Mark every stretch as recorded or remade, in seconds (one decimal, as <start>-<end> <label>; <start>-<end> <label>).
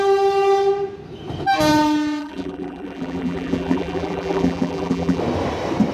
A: 0.0-2.2 recorded; 2.2-5.2 remade; 5.2-5.9 recorded